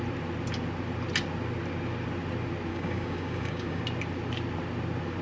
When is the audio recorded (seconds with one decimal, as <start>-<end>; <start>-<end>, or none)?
0.0-2.7; 3.8-5.2